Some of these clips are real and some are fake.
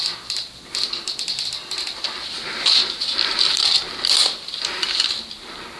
real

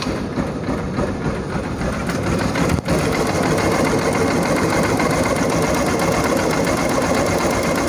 fake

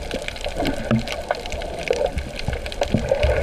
real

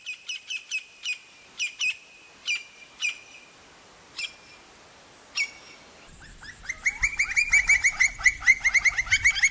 real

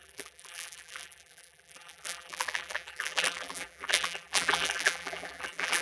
fake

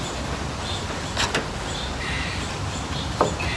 real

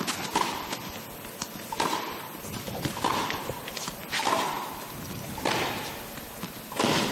real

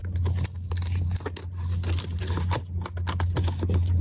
real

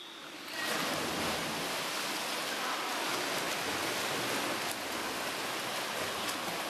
real